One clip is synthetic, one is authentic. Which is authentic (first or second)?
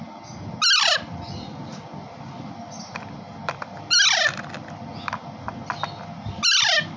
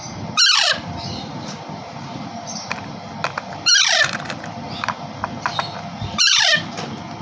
first